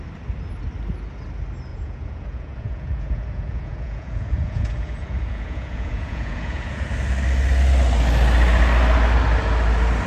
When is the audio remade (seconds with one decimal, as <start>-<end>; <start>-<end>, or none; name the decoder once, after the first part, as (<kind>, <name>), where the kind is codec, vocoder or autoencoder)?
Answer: 1.7-6.9 (vocoder, Vocos)